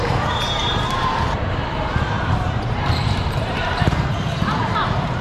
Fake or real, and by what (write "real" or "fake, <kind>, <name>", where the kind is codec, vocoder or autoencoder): fake, vocoder, BigVGAN v2